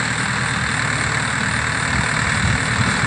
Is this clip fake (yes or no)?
no